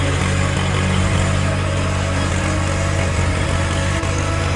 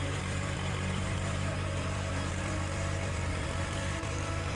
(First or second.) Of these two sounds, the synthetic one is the second